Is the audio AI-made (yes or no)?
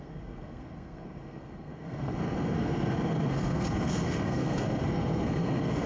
yes